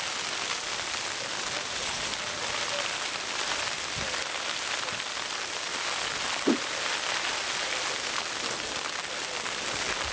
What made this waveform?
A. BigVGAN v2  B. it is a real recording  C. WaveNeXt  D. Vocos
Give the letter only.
B